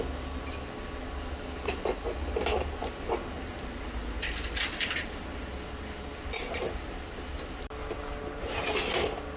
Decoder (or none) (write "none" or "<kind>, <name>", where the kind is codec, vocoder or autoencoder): none